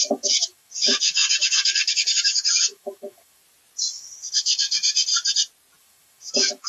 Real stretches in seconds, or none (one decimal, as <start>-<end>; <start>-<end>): 3.4-3.9; 5.1-5.8